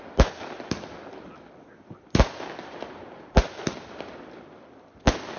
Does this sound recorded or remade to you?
recorded